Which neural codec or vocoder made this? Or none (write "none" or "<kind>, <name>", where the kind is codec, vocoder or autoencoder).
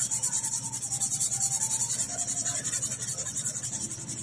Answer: none